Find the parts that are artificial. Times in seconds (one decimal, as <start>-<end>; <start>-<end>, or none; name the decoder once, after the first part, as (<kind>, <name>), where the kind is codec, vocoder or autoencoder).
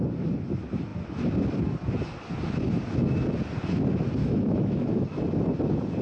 4.2-5.2 (autoencoder, DAC-VAE)